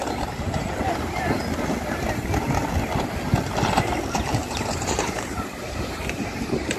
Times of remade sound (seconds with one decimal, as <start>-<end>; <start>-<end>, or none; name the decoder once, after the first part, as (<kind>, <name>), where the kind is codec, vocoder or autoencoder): 4.1-6.8 (vocoder, BigVGAN v2)